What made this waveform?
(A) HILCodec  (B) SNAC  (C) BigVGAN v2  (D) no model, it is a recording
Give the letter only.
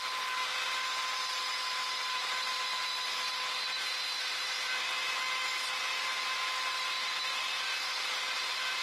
D